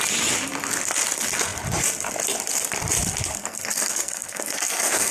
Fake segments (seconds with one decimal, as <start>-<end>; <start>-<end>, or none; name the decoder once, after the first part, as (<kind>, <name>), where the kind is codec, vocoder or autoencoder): 3.4-5.1 (codec, SNAC)